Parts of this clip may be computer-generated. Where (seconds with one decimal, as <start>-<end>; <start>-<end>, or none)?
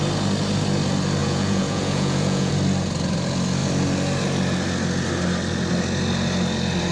1.2-2.5